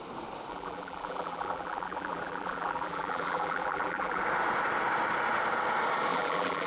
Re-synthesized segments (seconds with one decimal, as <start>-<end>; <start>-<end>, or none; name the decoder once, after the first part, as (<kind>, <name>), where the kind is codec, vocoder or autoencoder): 0.5-4.2 (vocoder, BigVGAN v2); 6.1-6.7